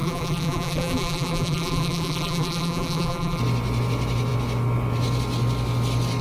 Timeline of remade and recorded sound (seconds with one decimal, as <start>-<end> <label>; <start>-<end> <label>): 0.0-3.4 remade; 3.4-6.2 recorded

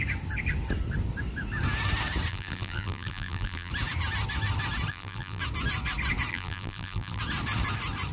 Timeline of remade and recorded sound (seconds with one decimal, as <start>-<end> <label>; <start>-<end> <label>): 0.0-2.3 recorded; 2.3-3.7 remade; 3.7-4.9 recorded; 4.9-5.4 remade; 5.4-6.3 recorded; 6.3-7.2 remade; 7.2-8.1 recorded

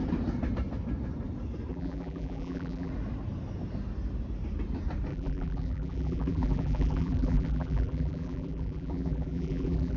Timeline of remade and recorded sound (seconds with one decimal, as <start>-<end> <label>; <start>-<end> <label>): 0.0-1.7 recorded; 1.7-2.9 remade; 2.9-5.1 recorded; 5.1-10.0 remade

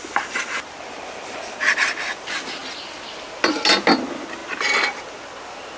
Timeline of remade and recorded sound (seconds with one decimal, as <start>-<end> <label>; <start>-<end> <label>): 0.0-5.8 recorded

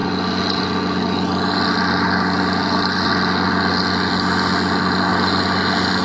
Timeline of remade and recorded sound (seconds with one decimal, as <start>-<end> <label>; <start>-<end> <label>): 0.0-3.1 remade; 3.1-5.1 recorded; 5.1-6.0 remade